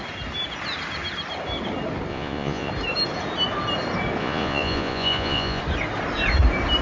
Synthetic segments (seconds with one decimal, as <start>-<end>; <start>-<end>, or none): 2.1-2.7; 4.2-5.6